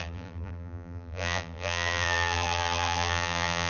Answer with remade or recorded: remade